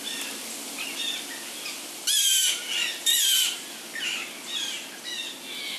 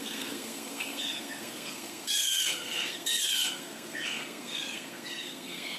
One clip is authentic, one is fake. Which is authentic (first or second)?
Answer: first